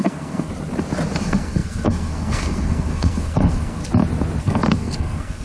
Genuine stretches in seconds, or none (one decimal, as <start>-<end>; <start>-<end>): 0.5-1.2; 3.8-4.4